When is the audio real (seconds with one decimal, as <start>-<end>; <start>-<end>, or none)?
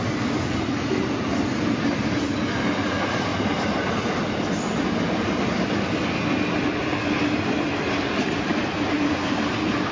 0.0-9.9